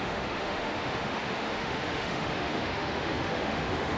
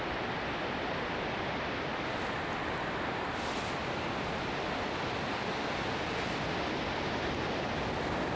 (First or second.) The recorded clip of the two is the second